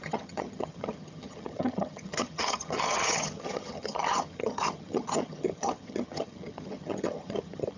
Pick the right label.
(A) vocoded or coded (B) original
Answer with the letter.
A